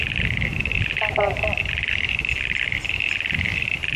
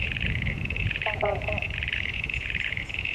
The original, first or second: first